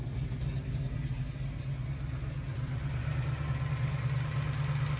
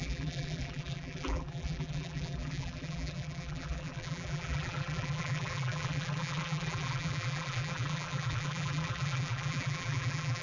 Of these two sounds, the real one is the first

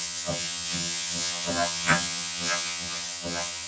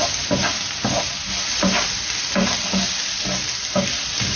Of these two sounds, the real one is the second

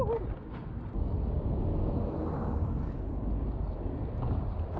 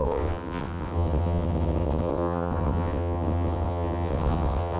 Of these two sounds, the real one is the first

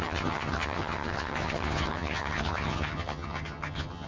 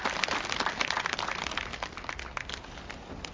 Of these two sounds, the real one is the second